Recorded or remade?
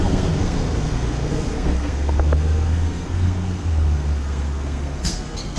remade